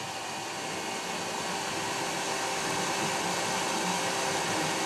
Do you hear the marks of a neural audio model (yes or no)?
no